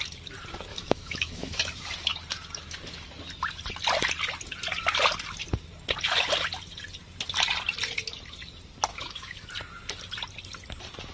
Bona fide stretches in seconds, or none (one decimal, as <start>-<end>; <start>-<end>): 0.0-0.7; 1.6-8.9; 9.5-11.1